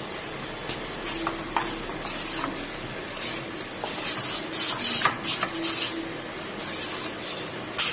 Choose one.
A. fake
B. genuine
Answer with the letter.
B